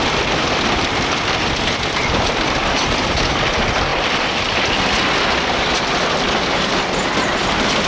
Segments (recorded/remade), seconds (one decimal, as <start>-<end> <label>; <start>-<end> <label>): 0.0-7.9 recorded